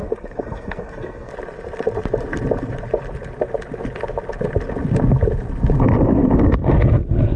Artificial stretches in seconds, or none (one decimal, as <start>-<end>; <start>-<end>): 0.0-1.3